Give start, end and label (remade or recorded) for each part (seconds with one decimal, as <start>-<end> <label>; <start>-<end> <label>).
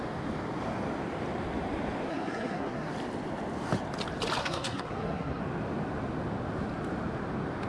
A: 0.0-2.1 recorded; 2.1-2.9 remade; 2.9-4.4 recorded; 4.4-5.4 remade; 5.4-7.7 recorded